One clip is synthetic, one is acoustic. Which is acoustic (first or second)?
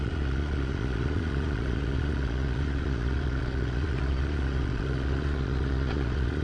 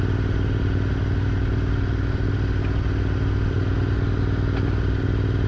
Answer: second